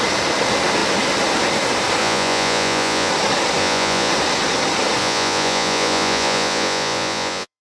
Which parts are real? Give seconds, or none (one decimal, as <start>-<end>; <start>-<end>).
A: 0.0-2.0; 3.1-3.6; 4.1-5.0